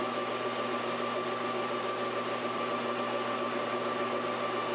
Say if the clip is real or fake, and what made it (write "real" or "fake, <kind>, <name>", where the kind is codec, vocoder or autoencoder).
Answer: real